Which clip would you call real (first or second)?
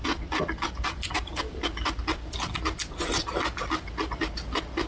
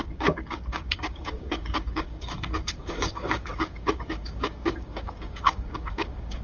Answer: first